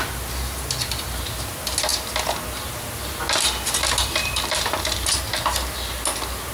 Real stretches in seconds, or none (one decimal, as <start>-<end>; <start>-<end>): 0.0-4.0; 5.1-6.5